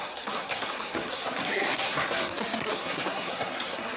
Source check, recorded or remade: remade